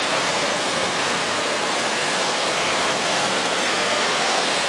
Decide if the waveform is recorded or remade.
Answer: remade